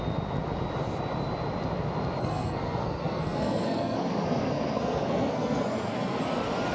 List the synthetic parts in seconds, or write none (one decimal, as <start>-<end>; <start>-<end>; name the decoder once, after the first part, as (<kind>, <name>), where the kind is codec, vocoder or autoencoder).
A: 2.2-6.2 (codec, SNAC)